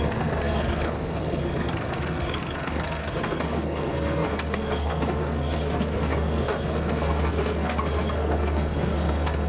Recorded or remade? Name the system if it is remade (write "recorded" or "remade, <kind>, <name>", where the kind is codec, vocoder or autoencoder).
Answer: remade, codec, SNAC